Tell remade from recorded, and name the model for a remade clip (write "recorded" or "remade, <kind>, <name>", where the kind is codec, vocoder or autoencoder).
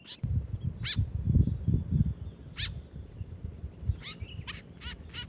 recorded